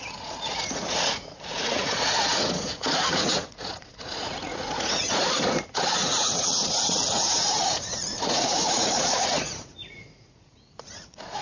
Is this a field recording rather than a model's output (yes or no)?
no